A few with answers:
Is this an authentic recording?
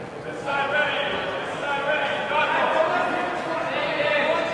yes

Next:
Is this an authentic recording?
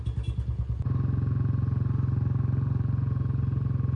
yes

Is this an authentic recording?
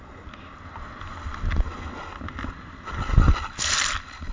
yes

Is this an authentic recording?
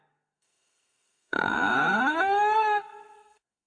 no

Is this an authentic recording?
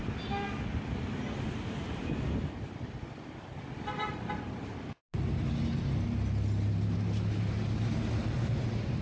yes